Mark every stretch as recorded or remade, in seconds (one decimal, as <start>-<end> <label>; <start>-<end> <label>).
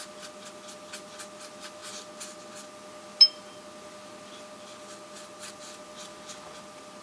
0.0-7.0 recorded